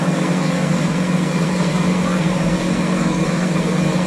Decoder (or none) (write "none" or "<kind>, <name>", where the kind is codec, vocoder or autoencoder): codec, SNAC